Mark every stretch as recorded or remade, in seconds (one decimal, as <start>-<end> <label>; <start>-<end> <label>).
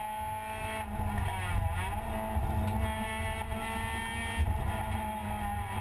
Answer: 0.0-5.8 recorded